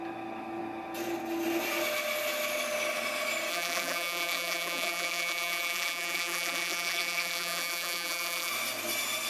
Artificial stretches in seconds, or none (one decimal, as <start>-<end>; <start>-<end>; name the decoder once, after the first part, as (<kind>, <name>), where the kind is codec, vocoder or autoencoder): 3.5-8.5 (vocoder, BigVGAN v2)